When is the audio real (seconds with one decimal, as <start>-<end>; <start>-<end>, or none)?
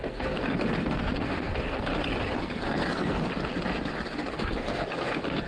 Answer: 1.9-2.4; 3.3-4.3